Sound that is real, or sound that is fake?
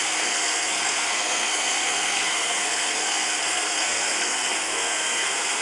fake